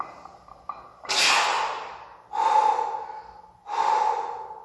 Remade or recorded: recorded